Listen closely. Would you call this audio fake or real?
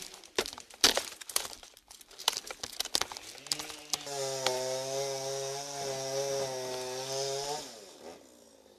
real